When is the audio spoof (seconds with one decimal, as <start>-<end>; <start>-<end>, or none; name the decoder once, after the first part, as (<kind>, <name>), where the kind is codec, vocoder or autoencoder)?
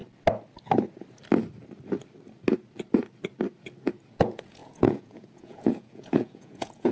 4.1-6.9 (vocoder, Vocos)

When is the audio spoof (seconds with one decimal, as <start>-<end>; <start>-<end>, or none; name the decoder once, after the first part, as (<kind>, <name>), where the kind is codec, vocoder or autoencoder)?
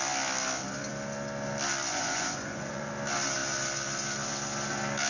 1.9-2.9 (vocoder, Vocos)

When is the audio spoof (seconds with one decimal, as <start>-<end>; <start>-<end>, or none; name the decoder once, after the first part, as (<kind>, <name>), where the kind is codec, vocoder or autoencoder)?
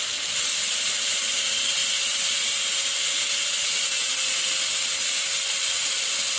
0.0-1.8 (vocoder, BigVGAN v2); 5.6-6.4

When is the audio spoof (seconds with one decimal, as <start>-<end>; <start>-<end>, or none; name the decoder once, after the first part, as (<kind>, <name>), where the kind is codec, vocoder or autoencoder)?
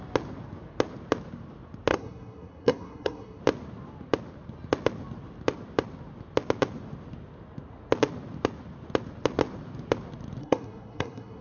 1.9-3.4 (codec, SNAC); 10.4-11.4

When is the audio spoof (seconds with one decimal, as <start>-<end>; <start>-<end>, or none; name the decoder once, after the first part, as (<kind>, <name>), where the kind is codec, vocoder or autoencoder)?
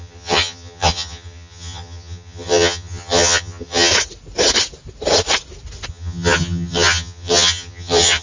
0.0-3.9 (vocoder, HiFi-GAN); 5.9-8.2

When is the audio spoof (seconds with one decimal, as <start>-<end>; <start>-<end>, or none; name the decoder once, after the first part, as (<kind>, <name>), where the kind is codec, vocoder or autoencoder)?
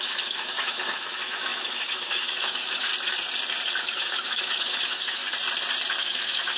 0.0-2.9 (autoencoder, DAC-VAE); 3.8-5.2; 6.0-6.6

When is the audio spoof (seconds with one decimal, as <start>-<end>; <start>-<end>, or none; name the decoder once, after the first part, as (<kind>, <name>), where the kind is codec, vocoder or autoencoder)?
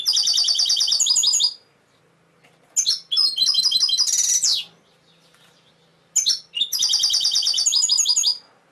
none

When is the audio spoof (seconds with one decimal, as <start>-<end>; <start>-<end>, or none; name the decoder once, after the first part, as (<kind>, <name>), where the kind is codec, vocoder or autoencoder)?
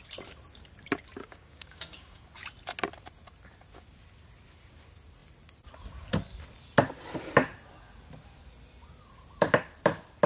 1.2-2.2 (codec, DAC)